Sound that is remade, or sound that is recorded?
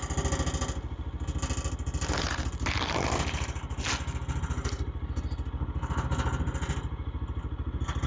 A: recorded